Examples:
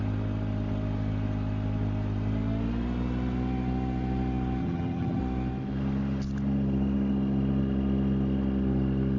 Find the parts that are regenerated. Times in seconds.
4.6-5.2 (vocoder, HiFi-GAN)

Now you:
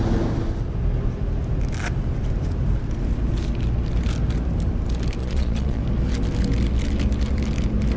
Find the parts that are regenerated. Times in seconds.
5.2-5.8 (vocoder, Vocos)

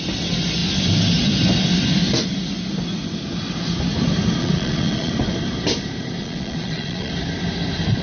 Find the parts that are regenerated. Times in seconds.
4.4-5.1 (vocoder, Vocos); 6.2-7.1

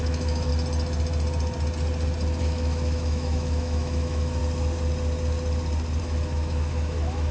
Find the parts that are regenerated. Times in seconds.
0.0-0.5 (autoencoder, DAC-VAE); 2.4-4.4; 6.0-7.3

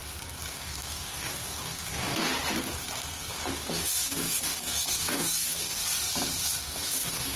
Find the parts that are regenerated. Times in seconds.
0.5-2.3 (codec, DAC); 3.3-5.8; 6.6-7.4

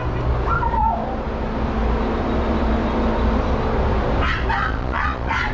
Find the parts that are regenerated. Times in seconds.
4.6-5.5 (vocoder, Vocos)

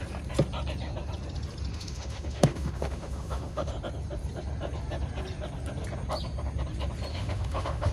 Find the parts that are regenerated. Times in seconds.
1.7-3.7 (autoencoder, DAC-VAE); 7.1-7.9